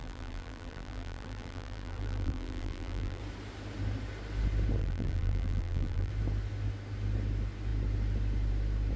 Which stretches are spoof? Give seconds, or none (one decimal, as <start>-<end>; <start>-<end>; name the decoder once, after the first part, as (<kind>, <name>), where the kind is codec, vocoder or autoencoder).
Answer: 0.0-3.2 (vocoder, BigVGAN v2); 4.8-6.1